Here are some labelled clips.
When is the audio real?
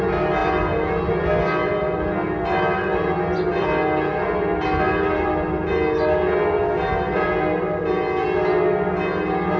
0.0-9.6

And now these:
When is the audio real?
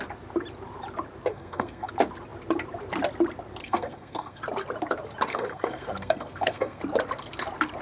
0.0-1.3; 1.9-3.6; 4.4-5.3; 6.8-7.8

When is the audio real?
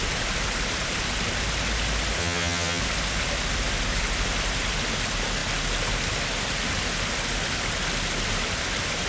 0.0-2.2; 2.8-9.1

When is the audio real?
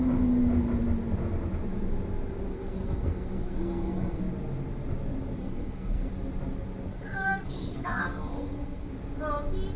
0.0-2.5; 4.2-5.4; 6.1-6.9; 8.9-9.8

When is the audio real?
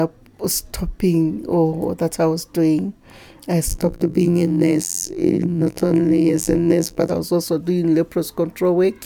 0.0-3.7; 7.1-9.0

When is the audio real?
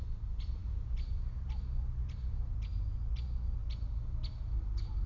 0.0-5.1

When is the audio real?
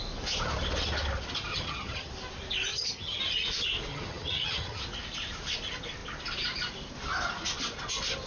0.0-1.5; 2.1-2.7; 3.2-3.9; 4.8-8.3